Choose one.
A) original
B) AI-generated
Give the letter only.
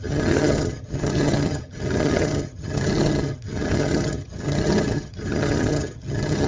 B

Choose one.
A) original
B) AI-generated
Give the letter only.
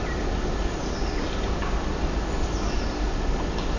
A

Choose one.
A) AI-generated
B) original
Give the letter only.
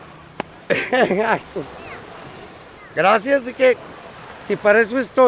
B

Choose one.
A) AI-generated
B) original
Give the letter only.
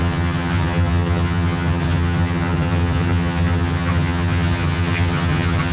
A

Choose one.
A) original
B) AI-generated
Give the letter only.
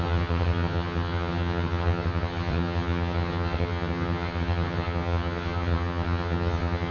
B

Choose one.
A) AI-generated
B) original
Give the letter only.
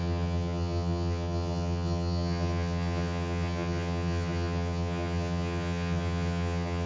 A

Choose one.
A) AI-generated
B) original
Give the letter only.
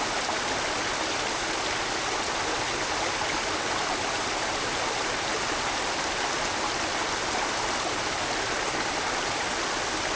B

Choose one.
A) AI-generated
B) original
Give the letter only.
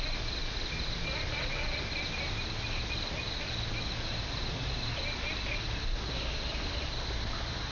B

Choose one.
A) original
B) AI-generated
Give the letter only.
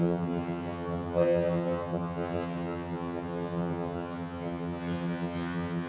B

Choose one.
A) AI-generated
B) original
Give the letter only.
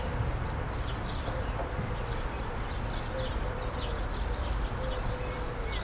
B